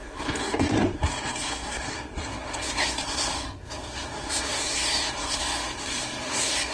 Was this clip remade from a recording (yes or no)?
yes